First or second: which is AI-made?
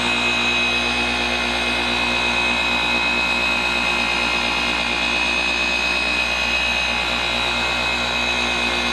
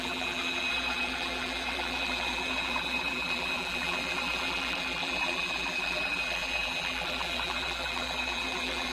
second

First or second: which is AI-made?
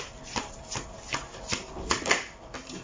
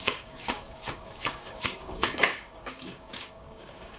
second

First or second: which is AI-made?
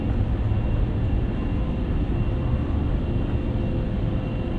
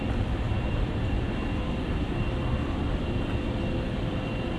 second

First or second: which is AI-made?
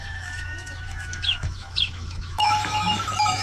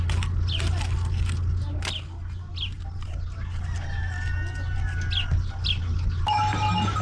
first